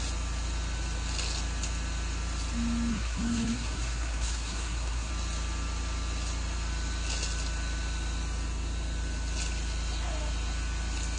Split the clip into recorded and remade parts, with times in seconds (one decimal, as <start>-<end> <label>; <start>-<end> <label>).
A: 0.0-2.9 recorded; 2.9-5.1 remade; 5.1-11.2 recorded